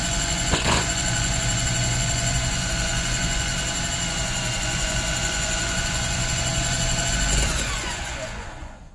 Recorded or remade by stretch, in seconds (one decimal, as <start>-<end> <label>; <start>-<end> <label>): 0.0-3.5 remade; 3.5-4.1 recorded; 4.1-8.9 remade